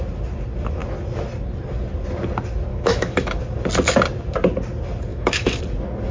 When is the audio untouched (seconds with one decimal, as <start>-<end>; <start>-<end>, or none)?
0.0-2.7; 3.4-5.1; 5.6-6.1